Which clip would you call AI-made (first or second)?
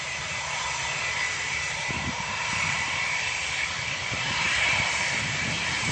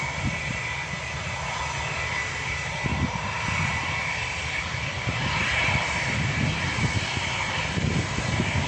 first